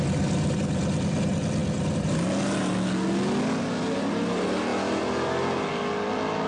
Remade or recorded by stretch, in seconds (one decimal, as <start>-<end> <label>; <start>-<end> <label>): 0.0-6.5 recorded